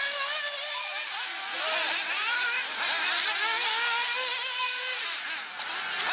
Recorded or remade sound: recorded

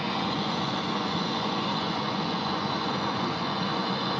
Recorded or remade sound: remade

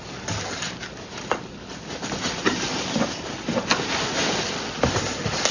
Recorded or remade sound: recorded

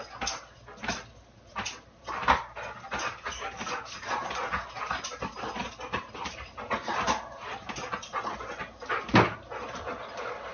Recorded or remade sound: recorded